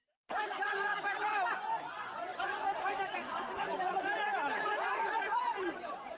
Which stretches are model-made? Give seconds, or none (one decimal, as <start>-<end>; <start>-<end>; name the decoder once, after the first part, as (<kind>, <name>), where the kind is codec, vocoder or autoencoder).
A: 0.0-0.9 (vocoder, Vocos); 1.5-6.2